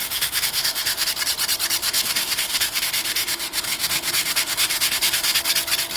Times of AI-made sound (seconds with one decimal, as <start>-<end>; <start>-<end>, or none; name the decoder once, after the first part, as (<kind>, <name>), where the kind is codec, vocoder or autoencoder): 0.0-1.1 (autoencoder, DAC-VAE); 1.8-5.4